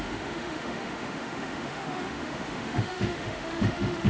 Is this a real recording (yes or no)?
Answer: no